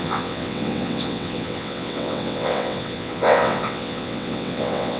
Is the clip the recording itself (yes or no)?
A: no